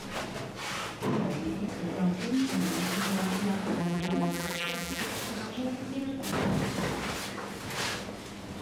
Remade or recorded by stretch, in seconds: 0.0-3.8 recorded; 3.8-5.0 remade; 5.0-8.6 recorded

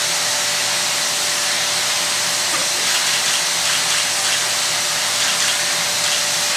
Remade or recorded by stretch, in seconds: 0.0-6.6 recorded

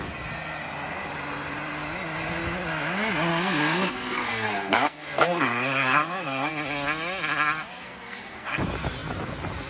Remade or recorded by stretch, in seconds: 0.0-3.3 recorded; 3.3-6.5 remade; 6.5-7.7 recorded; 7.7-8.6 remade; 8.6-9.7 recorded